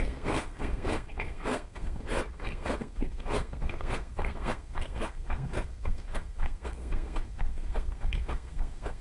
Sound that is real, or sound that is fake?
fake